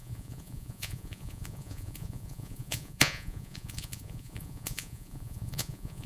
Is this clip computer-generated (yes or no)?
yes